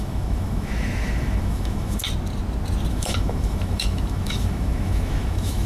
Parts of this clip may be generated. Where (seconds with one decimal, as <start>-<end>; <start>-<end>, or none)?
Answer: 0.0-2.0; 2.9-5.7